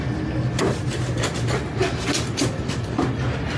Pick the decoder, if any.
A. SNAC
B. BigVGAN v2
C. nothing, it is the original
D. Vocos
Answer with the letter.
C